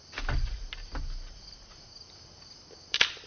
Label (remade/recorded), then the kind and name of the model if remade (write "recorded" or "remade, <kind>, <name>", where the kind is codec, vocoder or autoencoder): recorded